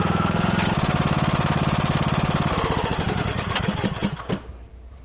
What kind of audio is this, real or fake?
fake